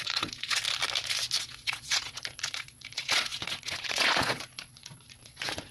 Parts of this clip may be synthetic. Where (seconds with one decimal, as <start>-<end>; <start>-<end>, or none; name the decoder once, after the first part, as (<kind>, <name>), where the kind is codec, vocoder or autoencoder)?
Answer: 0.0-0.6 (vocoder, Vocos); 1.4-5.7